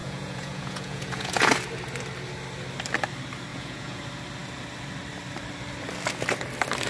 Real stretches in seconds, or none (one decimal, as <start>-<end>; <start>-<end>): 1.5-3.5; 4.0-6.9

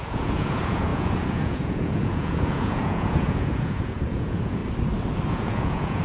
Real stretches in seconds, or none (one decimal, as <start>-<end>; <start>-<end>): 4.6-5.3

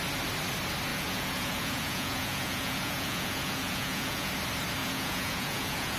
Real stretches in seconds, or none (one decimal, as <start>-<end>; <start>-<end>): 0.0-0.9; 4.3-4.8

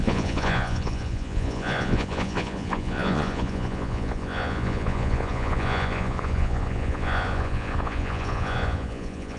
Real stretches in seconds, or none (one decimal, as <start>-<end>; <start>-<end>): none